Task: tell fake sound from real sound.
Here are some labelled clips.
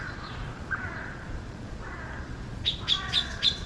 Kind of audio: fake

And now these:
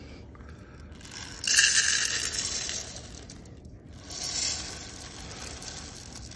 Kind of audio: real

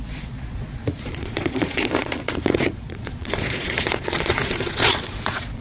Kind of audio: fake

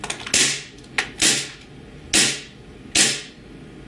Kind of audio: real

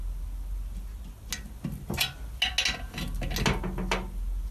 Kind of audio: real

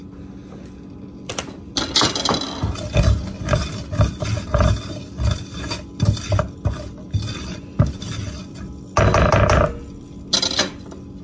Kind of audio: real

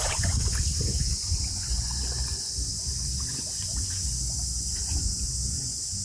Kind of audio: fake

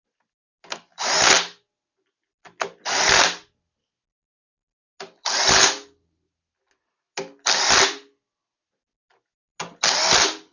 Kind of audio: real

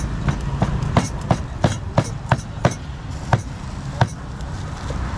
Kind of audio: real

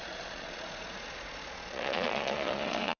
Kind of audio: fake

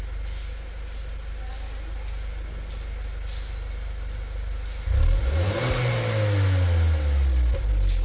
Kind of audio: real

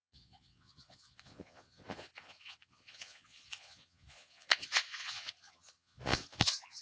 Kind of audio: fake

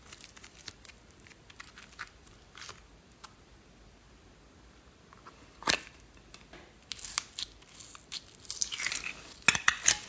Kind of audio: real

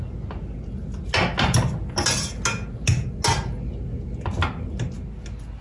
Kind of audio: real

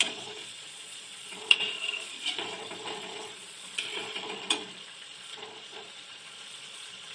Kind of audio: fake